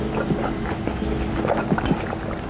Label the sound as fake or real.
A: real